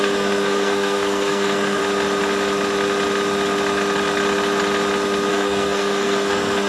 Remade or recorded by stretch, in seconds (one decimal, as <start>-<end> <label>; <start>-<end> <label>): 0.0-1.8 remade; 1.8-5.3 recorded; 5.3-6.7 remade